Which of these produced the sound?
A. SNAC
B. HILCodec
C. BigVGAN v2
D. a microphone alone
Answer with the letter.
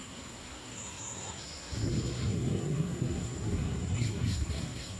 A